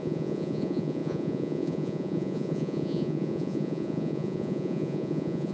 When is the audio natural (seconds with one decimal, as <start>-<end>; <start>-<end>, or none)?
none